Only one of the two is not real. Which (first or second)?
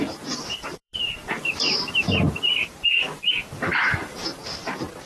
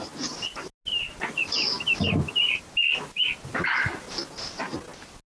first